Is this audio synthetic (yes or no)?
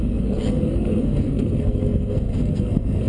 yes